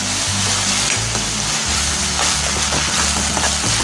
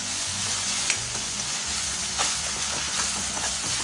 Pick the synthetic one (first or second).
second